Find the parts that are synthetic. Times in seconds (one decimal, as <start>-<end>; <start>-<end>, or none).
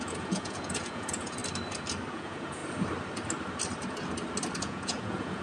0.0-1.4; 2.1-2.6; 4.6-5.4